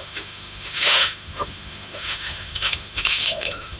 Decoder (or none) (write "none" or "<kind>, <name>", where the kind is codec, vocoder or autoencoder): autoencoder, DAC-VAE